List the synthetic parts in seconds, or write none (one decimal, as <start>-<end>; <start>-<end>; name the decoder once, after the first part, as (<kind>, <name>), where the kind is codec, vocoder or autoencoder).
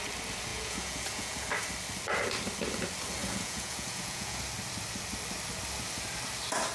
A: 0.5-1.5 (vocoder, Vocos); 3.2-4.4